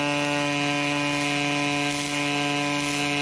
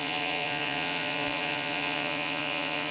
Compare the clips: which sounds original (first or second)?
first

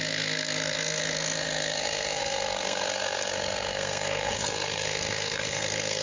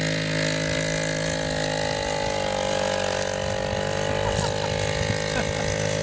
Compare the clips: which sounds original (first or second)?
second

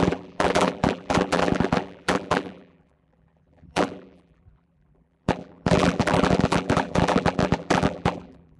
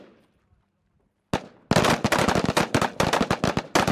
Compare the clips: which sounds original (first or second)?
second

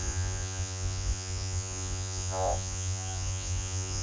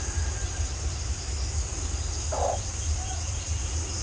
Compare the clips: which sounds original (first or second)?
second